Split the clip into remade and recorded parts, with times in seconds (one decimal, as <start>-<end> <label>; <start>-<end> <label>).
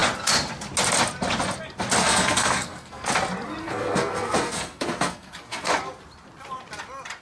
0.0-2.0 recorded; 2.0-3.1 remade; 3.1-3.6 recorded; 3.6-5.7 remade; 5.7-7.2 recorded